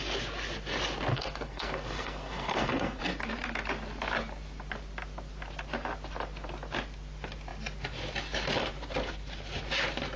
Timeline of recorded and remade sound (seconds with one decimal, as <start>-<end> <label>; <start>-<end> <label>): 0.0-1.1 recorded; 1.1-3.0 remade; 3.0-10.2 recorded